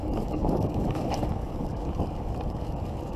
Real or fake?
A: fake